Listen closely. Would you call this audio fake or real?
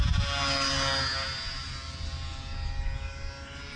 real